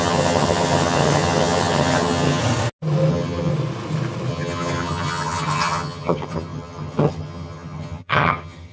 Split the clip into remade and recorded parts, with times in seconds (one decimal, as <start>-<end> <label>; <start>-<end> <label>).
0.0-2.4 remade; 2.4-3.1 recorded; 3.1-3.5 remade; 3.5-4.3 recorded; 4.3-8.7 remade